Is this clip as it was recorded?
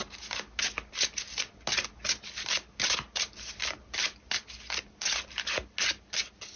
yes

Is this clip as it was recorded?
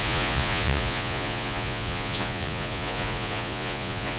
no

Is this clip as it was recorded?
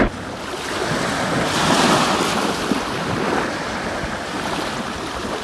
yes